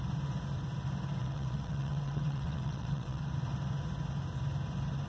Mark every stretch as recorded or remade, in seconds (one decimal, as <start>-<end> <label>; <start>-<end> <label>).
0.0-1.2 recorded; 1.2-3.2 remade; 3.2-5.1 recorded